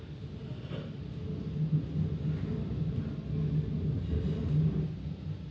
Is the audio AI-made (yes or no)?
no